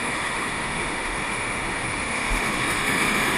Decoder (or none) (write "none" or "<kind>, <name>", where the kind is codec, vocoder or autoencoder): autoencoder, DAC-VAE